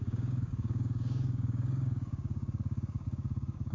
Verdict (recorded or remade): remade